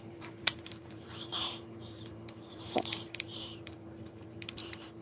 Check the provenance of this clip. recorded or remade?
remade